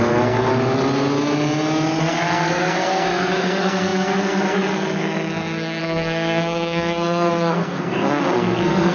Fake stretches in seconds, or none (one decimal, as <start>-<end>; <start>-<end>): 0.0-0.5; 2.0-8.9